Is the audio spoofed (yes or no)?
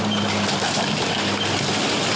no